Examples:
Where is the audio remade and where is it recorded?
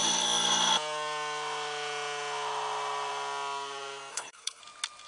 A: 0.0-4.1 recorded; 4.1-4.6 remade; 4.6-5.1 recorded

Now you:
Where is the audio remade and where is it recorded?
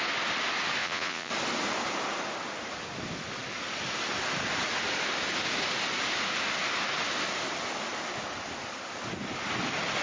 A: 0.0-0.8 recorded; 0.8-1.3 remade; 1.3-10.0 recorded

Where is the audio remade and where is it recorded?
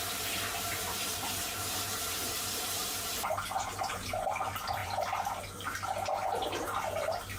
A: 0.0-0.5 recorded; 0.5-4.2 remade; 4.2-7.4 recorded